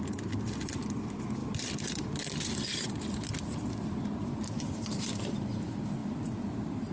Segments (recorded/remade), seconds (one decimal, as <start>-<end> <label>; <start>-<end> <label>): 0.0-1.4 recorded; 1.4-5.5 remade; 5.5-6.0 recorded; 6.0-6.9 remade